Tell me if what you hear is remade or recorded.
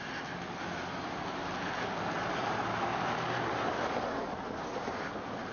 recorded